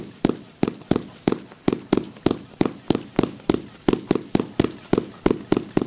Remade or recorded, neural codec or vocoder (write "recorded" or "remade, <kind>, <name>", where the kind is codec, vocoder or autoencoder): recorded